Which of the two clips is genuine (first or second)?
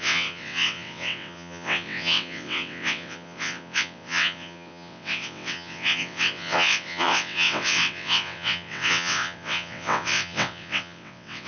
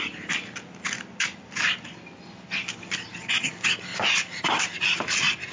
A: second